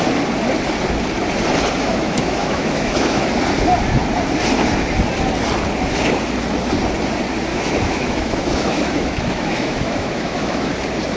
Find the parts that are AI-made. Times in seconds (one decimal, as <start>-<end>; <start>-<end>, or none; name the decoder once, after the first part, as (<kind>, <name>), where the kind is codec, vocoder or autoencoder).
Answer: 1.9-3.3 (autoencoder, DAC-VAE); 7.5-10.7